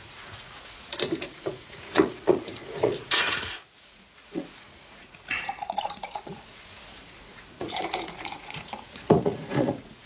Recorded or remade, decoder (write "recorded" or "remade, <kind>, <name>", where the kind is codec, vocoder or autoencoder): remade, vocoder, Vocos